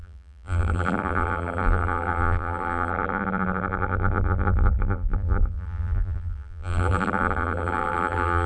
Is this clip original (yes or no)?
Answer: no